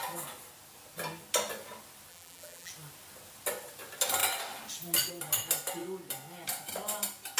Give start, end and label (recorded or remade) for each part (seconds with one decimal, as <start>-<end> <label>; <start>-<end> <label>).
0.0-2.1 recorded; 2.1-2.7 remade; 2.7-7.4 recorded